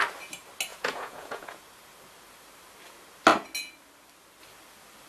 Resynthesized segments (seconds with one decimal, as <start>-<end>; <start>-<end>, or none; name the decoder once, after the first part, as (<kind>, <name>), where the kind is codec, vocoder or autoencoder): 0.7-1.6 (vocoder, Vocos)